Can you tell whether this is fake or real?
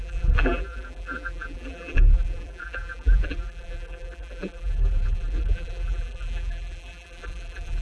fake